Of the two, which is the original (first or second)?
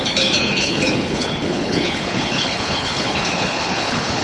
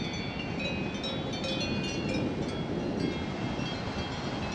second